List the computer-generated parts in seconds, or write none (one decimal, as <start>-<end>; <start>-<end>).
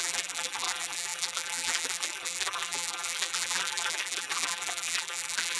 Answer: 0.0-5.6